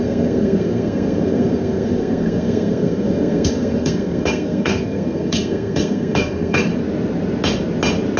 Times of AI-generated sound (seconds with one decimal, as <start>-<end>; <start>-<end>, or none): 0.0-6.7